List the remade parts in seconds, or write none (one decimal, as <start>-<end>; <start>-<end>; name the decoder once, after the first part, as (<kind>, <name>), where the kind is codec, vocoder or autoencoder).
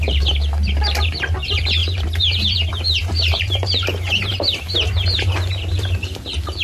0.0-6.6 (vocoder, BigVGAN v2)